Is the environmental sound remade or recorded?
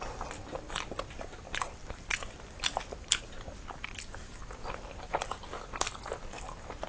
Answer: recorded